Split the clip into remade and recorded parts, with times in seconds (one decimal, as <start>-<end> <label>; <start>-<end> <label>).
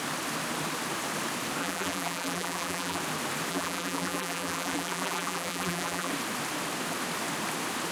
0.0-1.6 recorded; 1.6-3.0 remade; 3.0-3.5 recorded; 3.5-6.1 remade; 6.1-7.9 recorded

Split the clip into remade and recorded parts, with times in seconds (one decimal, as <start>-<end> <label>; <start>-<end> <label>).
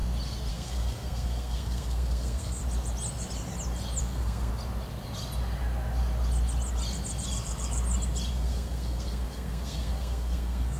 0.0-0.5 recorded; 0.5-2.6 remade; 2.6-4.0 recorded; 4.0-4.5 remade; 4.5-8.3 recorded; 8.3-10.8 remade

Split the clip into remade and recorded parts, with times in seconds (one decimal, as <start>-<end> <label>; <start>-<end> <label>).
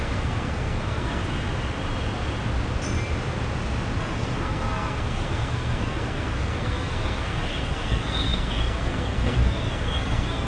0.0-1.2 remade; 1.2-4.0 recorded; 4.0-10.5 remade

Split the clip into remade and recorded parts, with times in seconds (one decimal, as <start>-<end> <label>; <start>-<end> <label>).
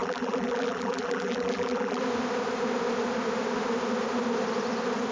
0.0-2.0 remade; 2.0-5.1 recorded